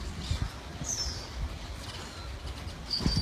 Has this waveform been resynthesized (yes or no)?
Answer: no